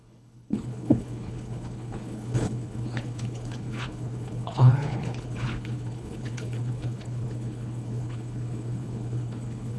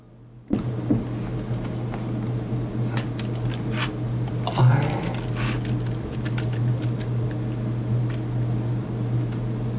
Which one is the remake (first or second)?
first